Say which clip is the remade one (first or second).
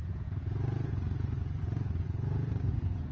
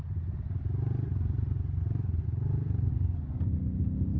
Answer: first